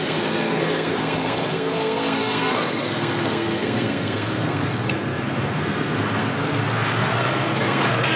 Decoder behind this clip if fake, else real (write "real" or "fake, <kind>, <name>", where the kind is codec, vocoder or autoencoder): fake, codec, SNAC